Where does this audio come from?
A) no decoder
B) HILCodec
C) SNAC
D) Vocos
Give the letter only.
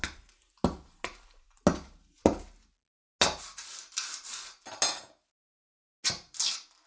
A